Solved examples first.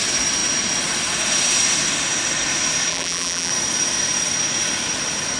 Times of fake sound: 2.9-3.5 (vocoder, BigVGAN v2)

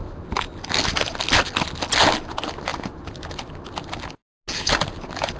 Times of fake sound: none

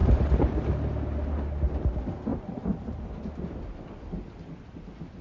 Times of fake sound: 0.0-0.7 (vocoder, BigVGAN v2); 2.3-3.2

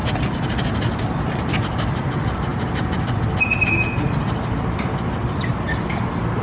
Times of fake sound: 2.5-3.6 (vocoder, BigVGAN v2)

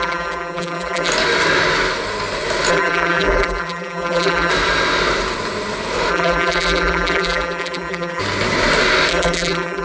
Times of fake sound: 0.0-1.1 (vocoder, BigVGAN v2); 2.7-4.5; 6.1-8.2; 9.1-9.8

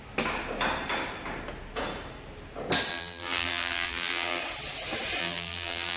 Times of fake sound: 2.9-4.4 (vocoder, BigVGAN v2); 5.2-6.0